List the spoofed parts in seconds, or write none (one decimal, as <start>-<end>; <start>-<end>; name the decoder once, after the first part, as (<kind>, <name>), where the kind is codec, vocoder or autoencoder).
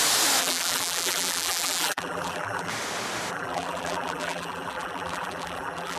0.4-2.7 (vocoder, BigVGAN v2); 3.3-6.0